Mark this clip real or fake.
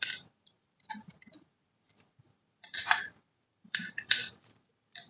fake